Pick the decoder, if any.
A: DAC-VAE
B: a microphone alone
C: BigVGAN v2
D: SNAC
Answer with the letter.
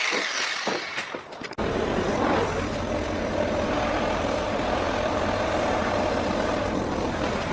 C